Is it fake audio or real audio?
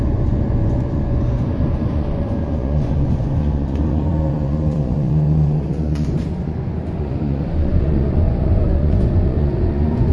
fake